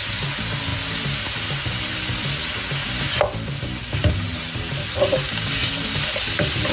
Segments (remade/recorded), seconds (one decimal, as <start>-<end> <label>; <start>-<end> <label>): 0.0-4.0 recorded; 4.0-4.9 remade; 4.9-5.6 recorded; 5.6-6.7 remade